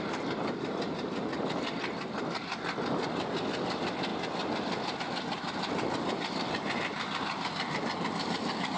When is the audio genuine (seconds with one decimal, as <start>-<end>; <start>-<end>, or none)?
0.0-8.8